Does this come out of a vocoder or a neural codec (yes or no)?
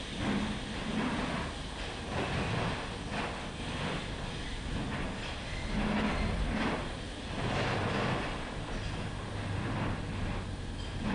no